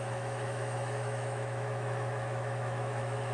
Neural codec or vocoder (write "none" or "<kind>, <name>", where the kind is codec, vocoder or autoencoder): autoencoder, DAC-VAE